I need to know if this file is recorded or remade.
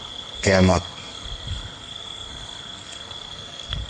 remade